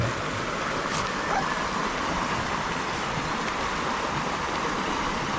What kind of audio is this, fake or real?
fake